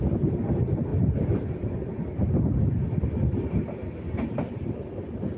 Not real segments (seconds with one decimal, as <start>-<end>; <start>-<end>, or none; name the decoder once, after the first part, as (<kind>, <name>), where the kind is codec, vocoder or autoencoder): 0.9-4.1 (vocoder, BigVGAN v2)